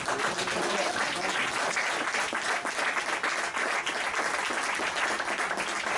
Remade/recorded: recorded